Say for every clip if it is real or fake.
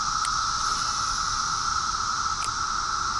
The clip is real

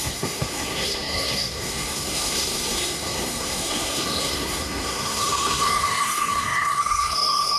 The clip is fake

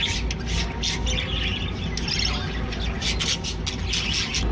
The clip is real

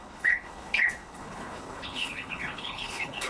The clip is fake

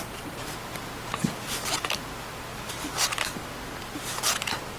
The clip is real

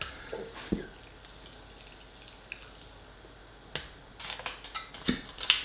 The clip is real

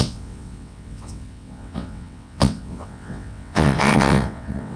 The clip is fake